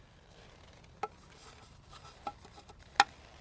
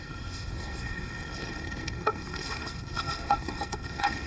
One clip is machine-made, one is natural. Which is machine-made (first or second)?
second